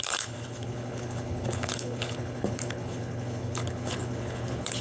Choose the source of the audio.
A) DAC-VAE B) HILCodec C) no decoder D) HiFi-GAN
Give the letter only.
B